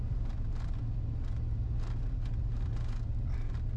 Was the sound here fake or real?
real